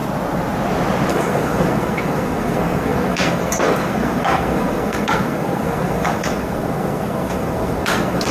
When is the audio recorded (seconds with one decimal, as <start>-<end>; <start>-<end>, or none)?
0.0-1.1